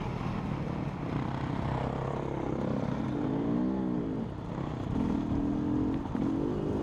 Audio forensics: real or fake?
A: real